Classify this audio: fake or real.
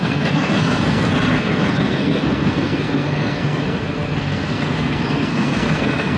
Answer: fake